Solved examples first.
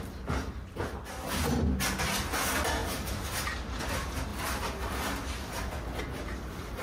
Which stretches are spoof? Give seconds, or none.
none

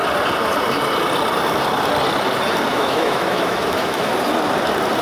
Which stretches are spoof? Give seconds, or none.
2.7-4.1 (autoencoder, DAC-VAE)

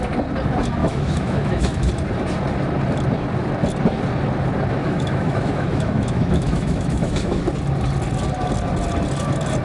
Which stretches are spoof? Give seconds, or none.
0.8-1.9 (autoencoder, DAC-VAE); 4.8-7.4